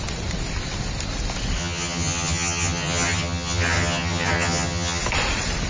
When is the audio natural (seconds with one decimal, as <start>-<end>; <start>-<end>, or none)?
0.0-1.6; 5.0-5.7